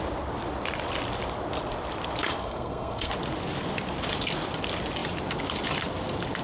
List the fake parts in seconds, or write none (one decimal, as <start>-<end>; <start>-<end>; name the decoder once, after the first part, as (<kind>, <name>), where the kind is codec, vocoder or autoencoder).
2.4-3.1 (codec, SNAC)